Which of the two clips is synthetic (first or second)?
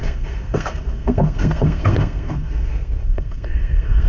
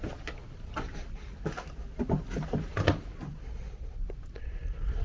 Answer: first